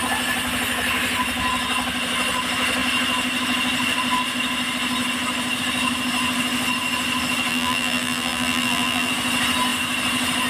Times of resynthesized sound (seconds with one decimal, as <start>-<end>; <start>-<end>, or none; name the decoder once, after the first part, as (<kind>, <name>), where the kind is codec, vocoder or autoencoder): 7.5-9.1 (vocoder, BigVGAN v2)